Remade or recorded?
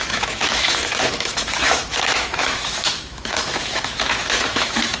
remade